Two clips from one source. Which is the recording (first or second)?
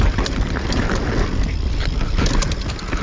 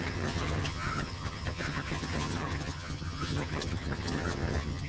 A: first